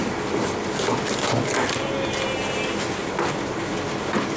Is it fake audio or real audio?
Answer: real